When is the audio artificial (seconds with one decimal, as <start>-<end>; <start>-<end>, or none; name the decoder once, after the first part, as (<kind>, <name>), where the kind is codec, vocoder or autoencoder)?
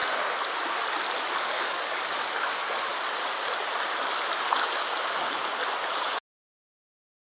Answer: 1.4-2.9 (codec, DAC); 6.3-7.2